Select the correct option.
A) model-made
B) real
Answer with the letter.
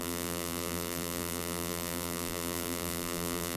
A